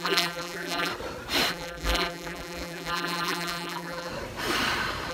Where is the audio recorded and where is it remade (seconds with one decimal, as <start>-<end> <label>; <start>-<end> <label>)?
0.0-0.9 remade; 0.9-1.5 recorded; 1.5-4.1 remade; 4.1-5.1 recorded